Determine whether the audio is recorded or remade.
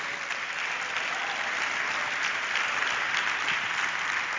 recorded